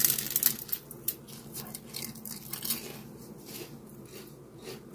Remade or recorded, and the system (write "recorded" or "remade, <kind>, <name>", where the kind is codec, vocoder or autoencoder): recorded